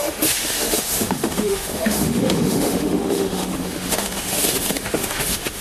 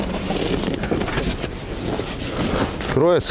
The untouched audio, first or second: second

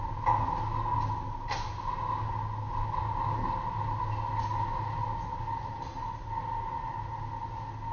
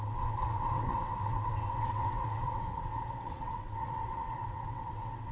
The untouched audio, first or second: first